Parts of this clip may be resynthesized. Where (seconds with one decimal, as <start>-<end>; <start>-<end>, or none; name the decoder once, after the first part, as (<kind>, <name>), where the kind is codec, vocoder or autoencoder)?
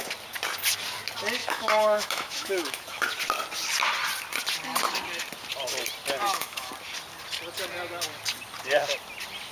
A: 1.4-3.1 (autoencoder, DAC-VAE); 6.2-6.7